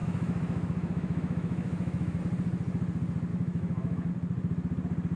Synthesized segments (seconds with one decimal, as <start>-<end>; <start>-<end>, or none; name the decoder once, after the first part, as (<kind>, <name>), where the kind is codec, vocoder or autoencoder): 0.0-2.2 (autoencoder, DAC-VAE); 3.3-4.1